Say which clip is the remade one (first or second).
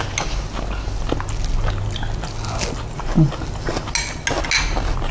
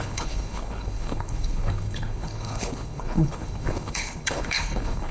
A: second